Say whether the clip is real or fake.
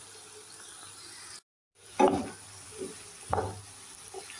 real